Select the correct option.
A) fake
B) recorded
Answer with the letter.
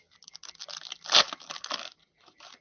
B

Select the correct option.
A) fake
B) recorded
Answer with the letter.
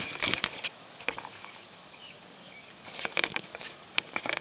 A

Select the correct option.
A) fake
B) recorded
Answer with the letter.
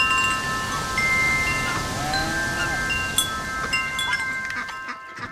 B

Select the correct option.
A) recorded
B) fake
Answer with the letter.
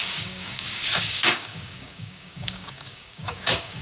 B